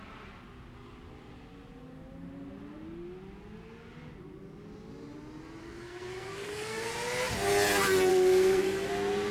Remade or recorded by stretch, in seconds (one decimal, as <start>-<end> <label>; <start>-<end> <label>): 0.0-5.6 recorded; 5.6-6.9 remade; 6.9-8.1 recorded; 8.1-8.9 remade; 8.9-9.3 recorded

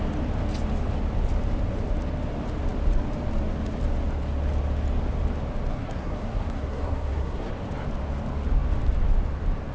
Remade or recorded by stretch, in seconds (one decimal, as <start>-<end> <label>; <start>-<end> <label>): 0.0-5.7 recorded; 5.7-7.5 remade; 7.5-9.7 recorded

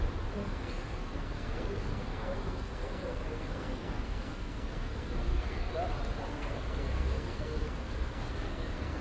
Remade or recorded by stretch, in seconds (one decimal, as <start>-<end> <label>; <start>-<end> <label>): 0.0-0.4 recorded; 0.4-5.7 remade; 5.7-6.3 recorded; 6.3-9.0 remade

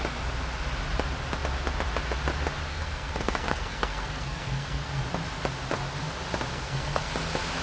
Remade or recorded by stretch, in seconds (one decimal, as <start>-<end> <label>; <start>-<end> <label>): 0.0-2.7 recorded; 2.7-5.0 remade; 5.0-6.5 recorded; 6.5-7.1 remade; 7.1-7.6 recorded

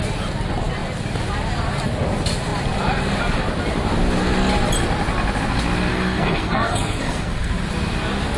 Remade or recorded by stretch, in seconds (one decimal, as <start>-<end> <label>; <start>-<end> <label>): 0.0-5.9 recorded; 5.9-7.5 remade; 7.5-8.4 recorded

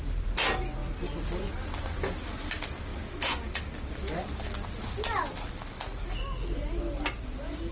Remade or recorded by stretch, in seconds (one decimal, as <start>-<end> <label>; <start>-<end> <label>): 0.0-7.7 recorded

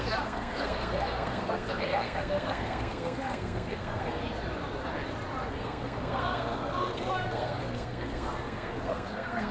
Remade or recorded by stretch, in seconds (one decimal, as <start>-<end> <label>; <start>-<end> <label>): 0.0-4.2 remade; 4.2-5.5 recorded; 5.5-9.5 remade